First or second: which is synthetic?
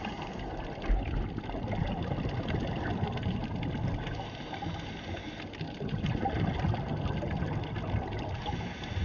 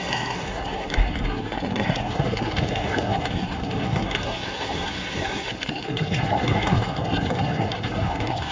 second